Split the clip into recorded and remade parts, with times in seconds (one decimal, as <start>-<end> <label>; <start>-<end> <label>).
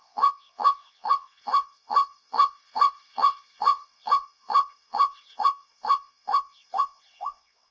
0.0-7.7 remade